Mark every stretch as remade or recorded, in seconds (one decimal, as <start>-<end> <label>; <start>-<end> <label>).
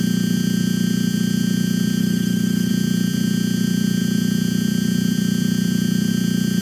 0.0-2.0 recorded; 2.0-2.7 remade; 2.7-6.6 recorded